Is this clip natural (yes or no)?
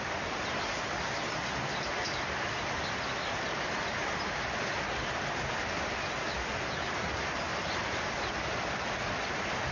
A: yes